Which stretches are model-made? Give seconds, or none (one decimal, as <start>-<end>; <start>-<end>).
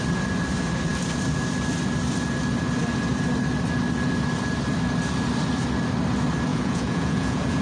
6.5-7.6